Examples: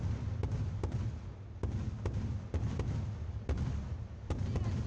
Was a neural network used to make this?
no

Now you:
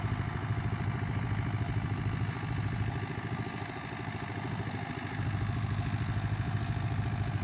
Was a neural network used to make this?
no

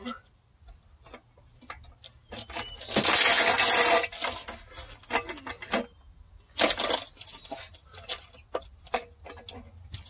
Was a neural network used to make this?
no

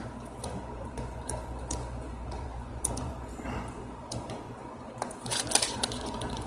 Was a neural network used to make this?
yes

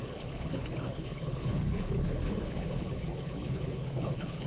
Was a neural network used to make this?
yes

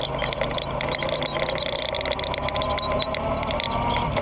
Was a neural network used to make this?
no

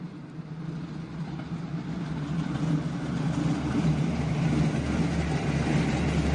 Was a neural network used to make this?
no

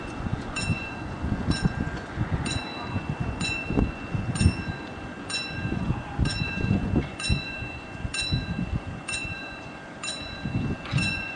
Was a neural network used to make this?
yes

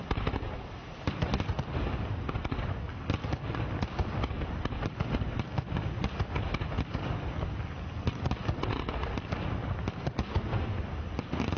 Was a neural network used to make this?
no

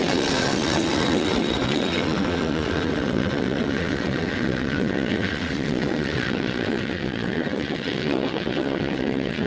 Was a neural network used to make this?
yes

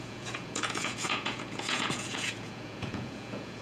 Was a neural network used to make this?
yes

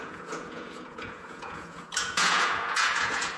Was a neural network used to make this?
yes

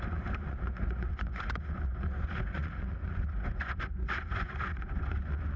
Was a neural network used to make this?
yes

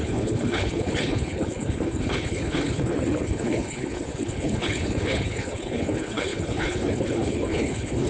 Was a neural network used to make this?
yes